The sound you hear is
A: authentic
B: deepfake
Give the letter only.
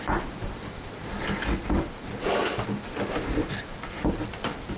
B